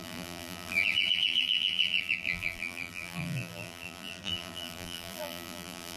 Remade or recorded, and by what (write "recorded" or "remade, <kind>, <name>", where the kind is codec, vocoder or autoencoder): remade, vocoder, BigVGAN v2